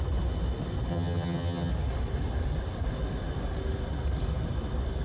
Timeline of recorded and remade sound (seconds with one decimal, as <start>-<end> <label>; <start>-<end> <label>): 0.0-0.9 recorded; 0.9-1.7 remade; 1.7-5.0 recorded